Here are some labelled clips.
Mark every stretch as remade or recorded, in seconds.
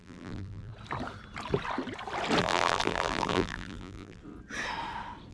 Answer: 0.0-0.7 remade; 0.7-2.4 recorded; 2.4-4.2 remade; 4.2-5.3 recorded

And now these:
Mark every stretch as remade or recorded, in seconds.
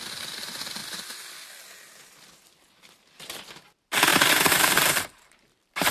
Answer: 0.0-4.1 recorded; 4.1-5.9 remade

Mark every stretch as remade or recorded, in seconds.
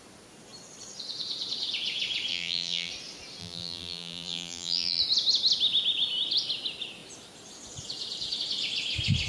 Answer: 0.0-2.3 recorded; 2.3-2.9 remade; 2.9-3.4 recorded; 3.4-5.0 remade; 5.0-9.3 recorded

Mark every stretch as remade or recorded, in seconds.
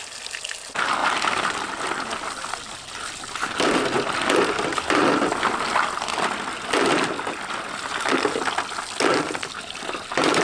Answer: 0.0-1.0 recorded; 1.0-1.8 remade; 1.8-10.4 recorded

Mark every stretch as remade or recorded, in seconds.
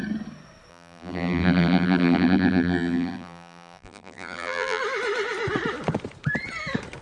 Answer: 0.0-0.7 recorded; 0.7-4.8 remade; 4.8-7.0 recorded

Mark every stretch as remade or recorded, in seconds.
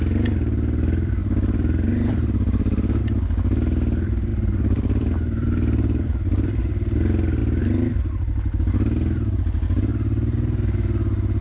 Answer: 0.0-1.2 recorded; 1.2-3.0 remade; 3.0-4.3 recorded; 4.3-6.6 remade; 6.6-7.4 recorded; 7.4-8.1 remade; 8.1-11.4 recorded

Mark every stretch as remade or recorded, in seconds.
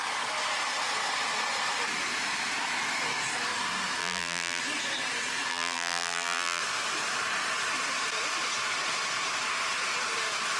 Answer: 0.0-4.0 recorded; 4.0-4.6 remade; 4.6-5.5 recorded; 5.5-6.6 remade; 6.6-10.6 recorded